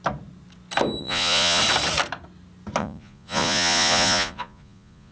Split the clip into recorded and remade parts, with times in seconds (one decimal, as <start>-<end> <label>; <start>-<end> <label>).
0.0-1.0 recorded; 1.0-1.6 remade; 1.6-2.8 recorded; 2.8-5.1 remade